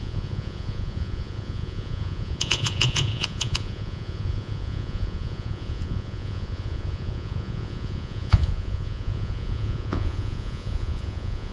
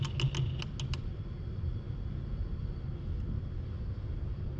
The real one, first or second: second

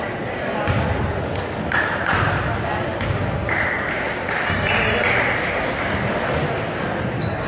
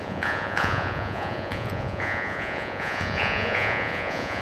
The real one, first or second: first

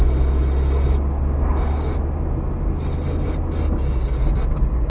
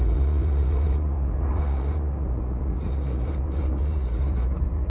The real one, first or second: first